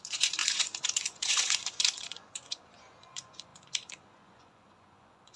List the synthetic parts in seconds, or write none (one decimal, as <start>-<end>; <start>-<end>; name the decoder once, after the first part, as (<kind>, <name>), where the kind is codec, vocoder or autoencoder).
0.0-5.4 (vocoder, Vocos)

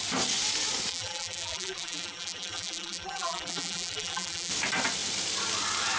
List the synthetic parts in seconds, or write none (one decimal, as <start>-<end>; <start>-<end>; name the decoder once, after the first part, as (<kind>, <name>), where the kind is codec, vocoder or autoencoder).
0.9-4.5 (vocoder, BigVGAN v2)